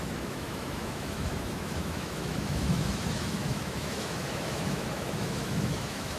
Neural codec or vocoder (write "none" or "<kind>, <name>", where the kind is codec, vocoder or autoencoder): autoencoder, DAC-VAE